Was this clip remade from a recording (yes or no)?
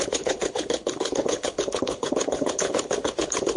yes